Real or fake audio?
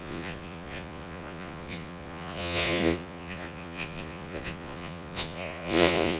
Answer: fake